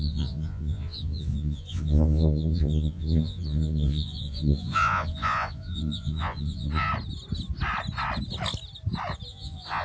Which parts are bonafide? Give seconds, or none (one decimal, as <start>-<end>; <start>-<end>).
6.9-9.3